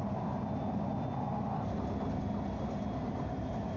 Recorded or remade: recorded